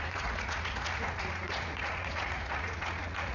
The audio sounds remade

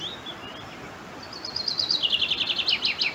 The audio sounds recorded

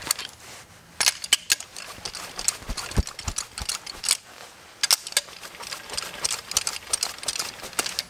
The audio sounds recorded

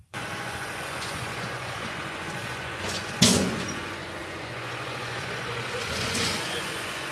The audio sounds remade